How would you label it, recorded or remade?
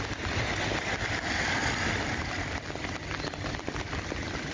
recorded